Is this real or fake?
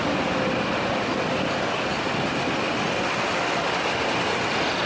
real